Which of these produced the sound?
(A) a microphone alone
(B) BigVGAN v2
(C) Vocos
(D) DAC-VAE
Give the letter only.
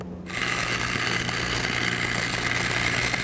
A